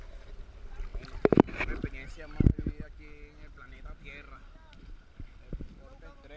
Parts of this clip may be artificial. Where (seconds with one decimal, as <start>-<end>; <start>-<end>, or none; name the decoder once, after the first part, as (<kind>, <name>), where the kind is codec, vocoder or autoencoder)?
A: none